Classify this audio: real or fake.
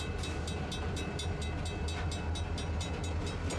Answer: real